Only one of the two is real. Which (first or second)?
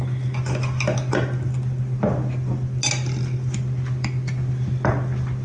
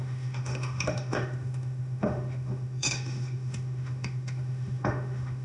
first